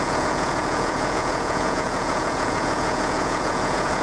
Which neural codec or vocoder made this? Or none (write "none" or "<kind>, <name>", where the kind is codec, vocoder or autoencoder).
vocoder, Vocos